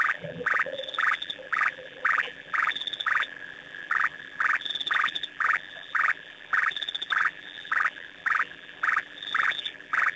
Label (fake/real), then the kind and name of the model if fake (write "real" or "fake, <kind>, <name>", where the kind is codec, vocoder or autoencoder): fake, vocoder, BigVGAN v2